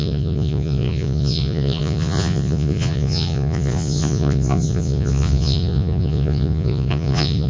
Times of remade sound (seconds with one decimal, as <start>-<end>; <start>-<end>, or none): 0.0-7.5